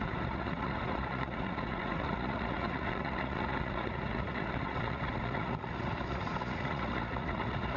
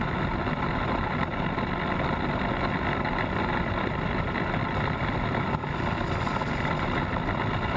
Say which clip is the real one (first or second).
second